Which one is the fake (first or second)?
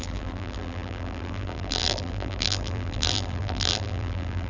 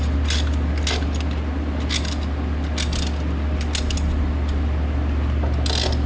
first